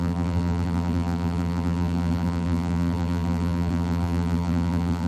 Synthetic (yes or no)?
yes